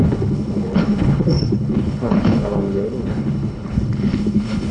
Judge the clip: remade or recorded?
remade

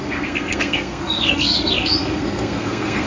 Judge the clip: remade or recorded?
remade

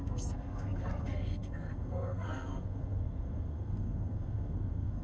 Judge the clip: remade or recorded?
remade